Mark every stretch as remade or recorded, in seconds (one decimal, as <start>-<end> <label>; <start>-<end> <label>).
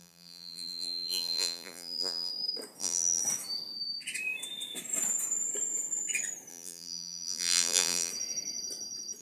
0.0-2.3 remade; 2.3-2.8 recorded; 2.8-3.2 remade; 3.2-6.5 recorded; 6.5-8.1 remade; 8.1-9.2 recorded